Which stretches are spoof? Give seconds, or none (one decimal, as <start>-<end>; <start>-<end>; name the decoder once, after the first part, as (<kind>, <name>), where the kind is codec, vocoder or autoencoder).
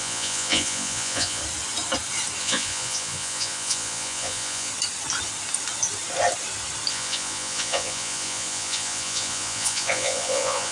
0.0-1.4 (vocoder, Vocos); 2.4-4.7; 6.9-10.7